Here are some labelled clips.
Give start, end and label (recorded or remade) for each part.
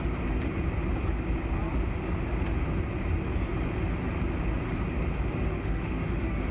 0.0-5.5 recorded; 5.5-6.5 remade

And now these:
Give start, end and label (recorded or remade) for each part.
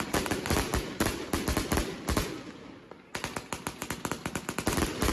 0.0-5.1 recorded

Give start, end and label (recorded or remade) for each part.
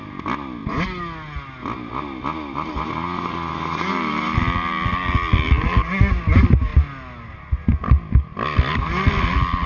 0.0-9.7 recorded